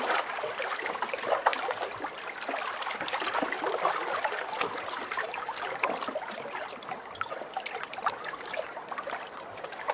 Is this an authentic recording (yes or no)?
no